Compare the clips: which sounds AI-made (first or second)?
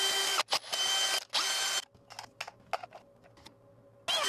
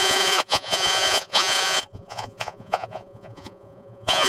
second